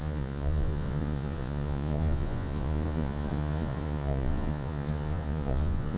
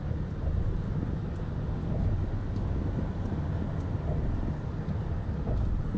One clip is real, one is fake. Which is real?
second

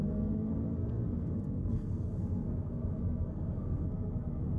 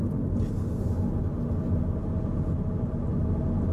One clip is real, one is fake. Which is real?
second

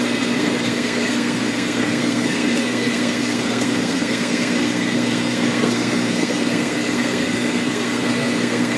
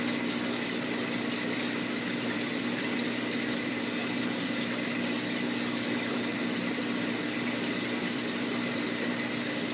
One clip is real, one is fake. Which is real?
second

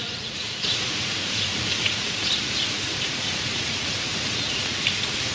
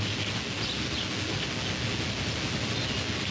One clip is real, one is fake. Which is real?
second